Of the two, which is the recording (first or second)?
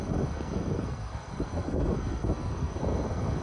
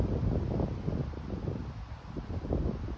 second